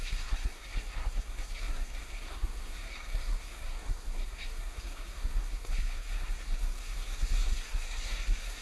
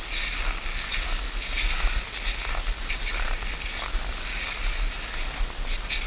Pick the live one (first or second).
second